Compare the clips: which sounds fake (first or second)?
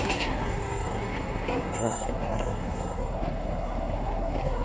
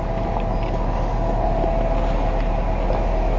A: first